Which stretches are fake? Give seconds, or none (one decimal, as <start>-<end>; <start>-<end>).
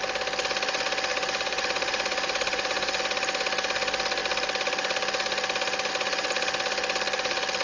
1.1-3.0